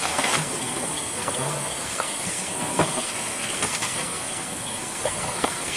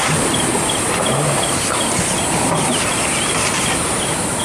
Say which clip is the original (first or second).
second